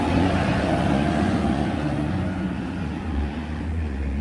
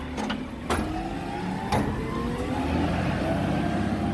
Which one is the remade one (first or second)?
first